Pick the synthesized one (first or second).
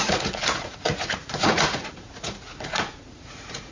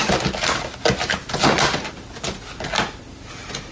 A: first